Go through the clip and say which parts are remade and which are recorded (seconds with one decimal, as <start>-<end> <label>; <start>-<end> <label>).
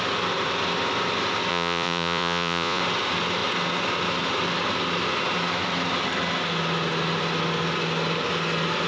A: 0.0-1.5 recorded; 1.5-2.8 remade; 2.8-8.9 recorded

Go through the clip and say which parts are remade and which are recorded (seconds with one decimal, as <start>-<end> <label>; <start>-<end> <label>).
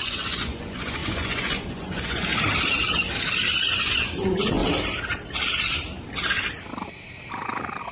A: 0.0-2.3 remade; 2.3-3.7 recorded; 3.7-4.6 remade; 4.6-7.9 recorded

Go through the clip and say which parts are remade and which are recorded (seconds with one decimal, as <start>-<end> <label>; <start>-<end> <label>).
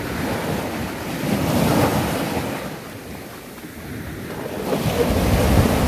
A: 0.0-5.9 recorded